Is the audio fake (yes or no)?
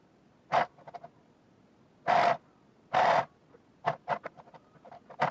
no